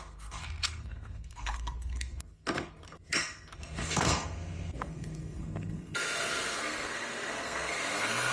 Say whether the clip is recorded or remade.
remade